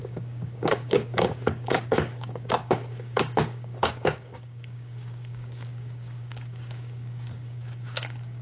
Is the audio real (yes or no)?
no